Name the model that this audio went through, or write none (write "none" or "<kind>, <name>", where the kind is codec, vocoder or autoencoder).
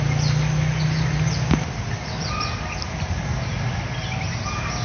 none